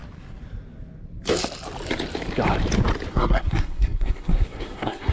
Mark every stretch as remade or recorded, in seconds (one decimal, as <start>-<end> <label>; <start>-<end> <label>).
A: 0.0-3.1 recorded; 3.1-5.1 remade